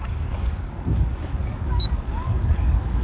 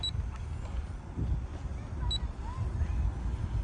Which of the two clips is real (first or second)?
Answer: second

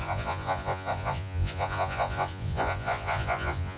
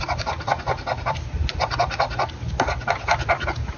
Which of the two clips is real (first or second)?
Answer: second